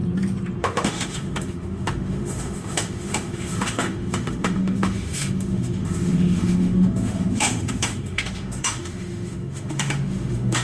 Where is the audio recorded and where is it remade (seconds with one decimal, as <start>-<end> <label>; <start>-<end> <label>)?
0.0-0.6 recorded; 0.6-10.6 remade